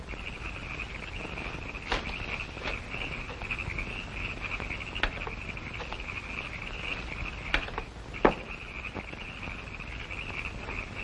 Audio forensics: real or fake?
real